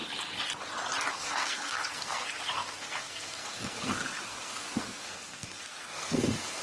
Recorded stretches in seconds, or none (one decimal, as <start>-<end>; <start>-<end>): 0.0-1.1